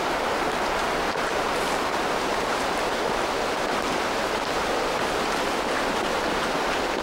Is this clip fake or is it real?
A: real